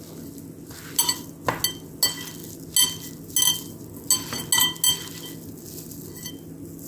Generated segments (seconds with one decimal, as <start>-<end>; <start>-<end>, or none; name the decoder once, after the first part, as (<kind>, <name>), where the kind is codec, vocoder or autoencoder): none